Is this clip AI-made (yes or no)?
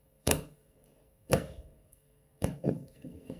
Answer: yes